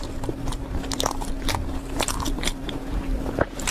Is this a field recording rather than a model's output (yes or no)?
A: no